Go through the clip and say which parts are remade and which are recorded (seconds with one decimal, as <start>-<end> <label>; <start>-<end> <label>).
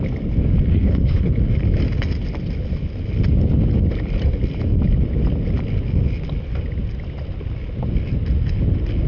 0.0-0.7 recorded; 0.7-1.3 remade; 1.3-9.1 recorded